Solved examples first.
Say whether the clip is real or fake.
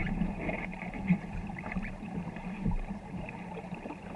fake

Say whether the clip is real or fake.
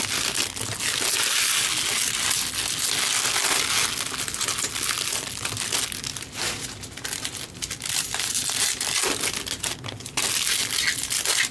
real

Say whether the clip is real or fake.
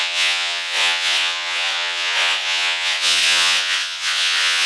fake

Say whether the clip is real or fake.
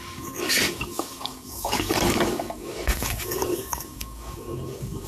fake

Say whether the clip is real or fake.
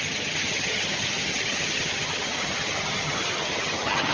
fake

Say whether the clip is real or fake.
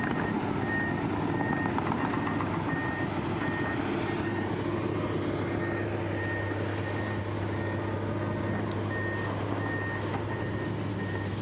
real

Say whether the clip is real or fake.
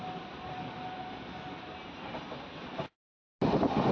real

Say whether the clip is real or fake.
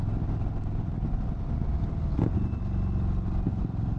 real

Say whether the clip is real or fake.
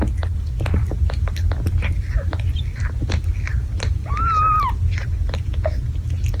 real